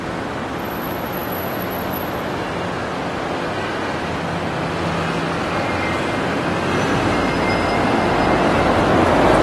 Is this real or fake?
real